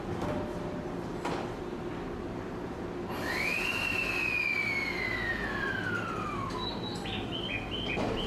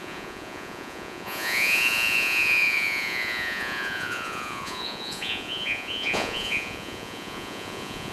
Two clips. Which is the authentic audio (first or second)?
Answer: first